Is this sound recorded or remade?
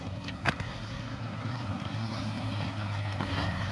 remade